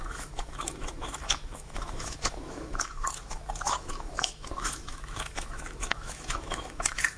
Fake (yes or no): yes